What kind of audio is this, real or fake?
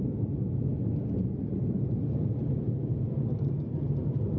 real